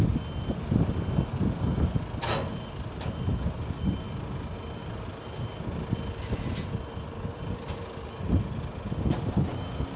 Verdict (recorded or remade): recorded